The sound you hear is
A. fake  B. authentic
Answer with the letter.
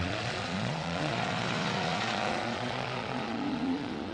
A